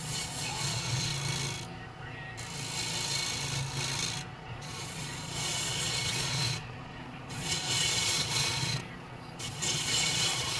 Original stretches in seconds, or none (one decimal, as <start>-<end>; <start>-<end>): 1.1-4.3